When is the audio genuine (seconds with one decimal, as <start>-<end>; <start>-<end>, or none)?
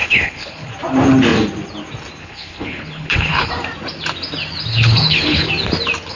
0.7-2.2; 3.5-4.7; 5.5-6.2